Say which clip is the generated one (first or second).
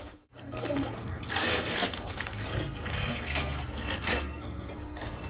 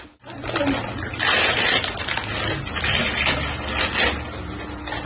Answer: first